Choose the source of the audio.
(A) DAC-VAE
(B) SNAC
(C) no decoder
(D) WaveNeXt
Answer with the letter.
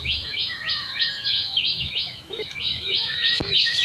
A